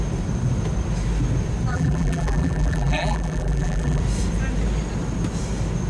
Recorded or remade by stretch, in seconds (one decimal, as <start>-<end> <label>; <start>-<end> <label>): 0.0-1.7 recorded; 1.7-4.0 remade; 4.0-5.9 recorded